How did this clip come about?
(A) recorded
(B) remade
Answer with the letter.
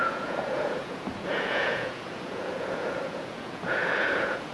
B